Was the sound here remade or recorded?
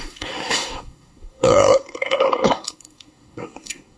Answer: remade